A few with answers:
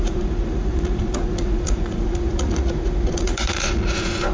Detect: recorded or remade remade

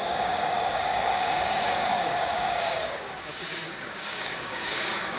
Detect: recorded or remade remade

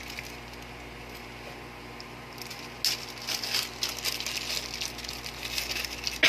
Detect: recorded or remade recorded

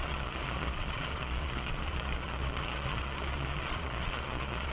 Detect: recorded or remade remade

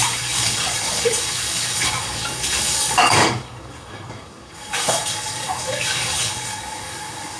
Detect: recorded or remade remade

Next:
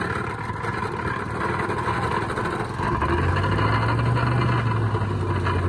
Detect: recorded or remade recorded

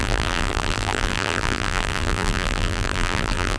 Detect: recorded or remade remade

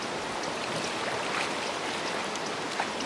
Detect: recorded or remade recorded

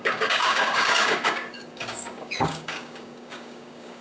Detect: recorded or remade remade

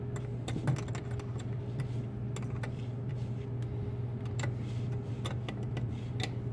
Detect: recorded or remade recorded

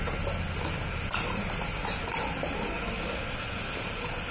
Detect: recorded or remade recorded